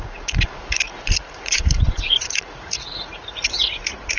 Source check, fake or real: fake